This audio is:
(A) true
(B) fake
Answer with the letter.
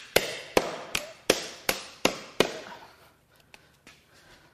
B